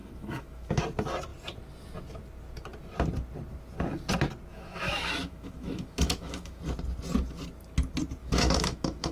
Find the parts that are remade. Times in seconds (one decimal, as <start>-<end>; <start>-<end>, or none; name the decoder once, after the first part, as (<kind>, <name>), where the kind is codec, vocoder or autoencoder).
0.0-0.8 (autoencoder, DAC-VAE); 4.5-6.6; 8.2-9.1